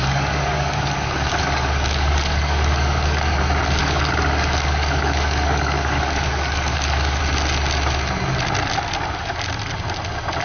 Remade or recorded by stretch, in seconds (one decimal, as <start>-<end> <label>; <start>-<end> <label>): 0.0-3.4 remade; 3.4-3.8 recorded; 3.8-7.2 remade; 7.2-10.4 recorded